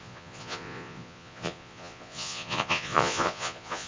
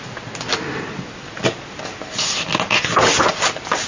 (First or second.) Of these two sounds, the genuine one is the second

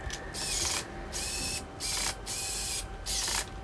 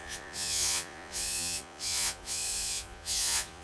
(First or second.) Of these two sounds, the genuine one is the first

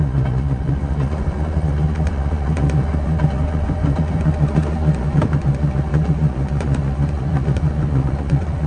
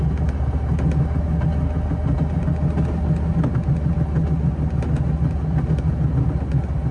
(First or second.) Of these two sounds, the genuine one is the second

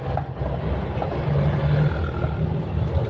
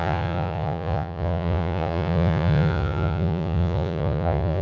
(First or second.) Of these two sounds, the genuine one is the first